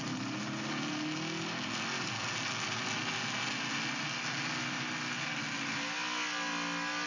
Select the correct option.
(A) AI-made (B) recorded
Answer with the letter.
B